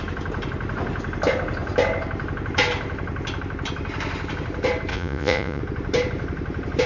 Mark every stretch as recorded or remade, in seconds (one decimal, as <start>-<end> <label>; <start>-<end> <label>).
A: 0.0-4.9 recorded; 4.9-5.6 remade; 5.6-6.9 recorded